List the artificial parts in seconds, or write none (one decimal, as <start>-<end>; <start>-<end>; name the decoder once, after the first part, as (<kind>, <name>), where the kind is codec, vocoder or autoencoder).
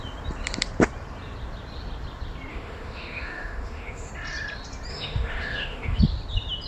2.5-4.1 (autoencoder, DAC-VAE); 4.9-6.0